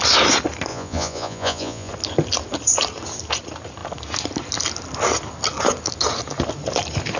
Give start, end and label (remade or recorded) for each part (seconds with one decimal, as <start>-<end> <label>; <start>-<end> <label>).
0.0-0.7 recorded; 0.7-1.9 remade; 1.9-7.2 recorded